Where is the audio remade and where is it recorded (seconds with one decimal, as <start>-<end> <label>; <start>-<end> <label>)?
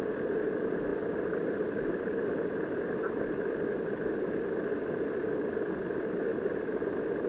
0.0-7.3 recorded